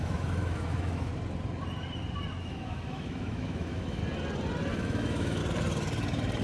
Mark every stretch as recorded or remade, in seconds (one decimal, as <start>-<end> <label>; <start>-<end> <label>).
0.0-1.1 remade; 1.1-2.4 recorded; 2.4-4.0 remade; 4.0-4.7 recorded; 4.7-5.4 remade; 5.4-6.4 recorded